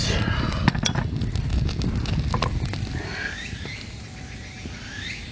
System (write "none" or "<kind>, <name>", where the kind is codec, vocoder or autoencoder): none